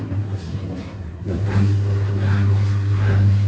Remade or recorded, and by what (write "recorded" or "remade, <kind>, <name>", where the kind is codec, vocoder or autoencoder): remade, codec, SNAC